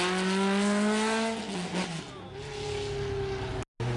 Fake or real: real